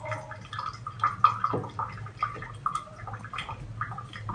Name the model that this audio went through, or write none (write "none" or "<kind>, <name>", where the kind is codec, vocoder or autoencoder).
none